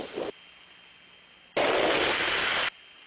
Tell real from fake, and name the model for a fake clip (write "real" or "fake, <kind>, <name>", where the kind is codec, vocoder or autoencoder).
real